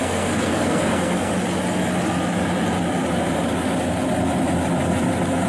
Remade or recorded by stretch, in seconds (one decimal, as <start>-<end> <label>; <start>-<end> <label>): 0.0-1.3 remade; 1.3-5.5 recorded